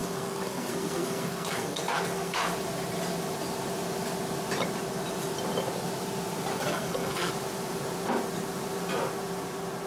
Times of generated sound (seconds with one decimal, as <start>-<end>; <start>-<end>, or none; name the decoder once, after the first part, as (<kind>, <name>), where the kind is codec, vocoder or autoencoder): 0.0-2.5 (codec, SNAC); 6.5-7.3